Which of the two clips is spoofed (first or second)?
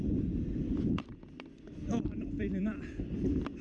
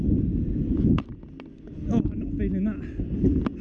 first